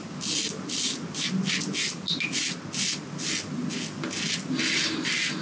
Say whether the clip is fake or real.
real